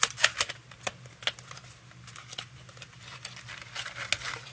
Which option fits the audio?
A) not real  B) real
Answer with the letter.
B